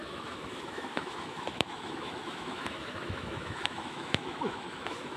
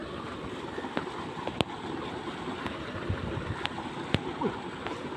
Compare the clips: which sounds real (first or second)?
second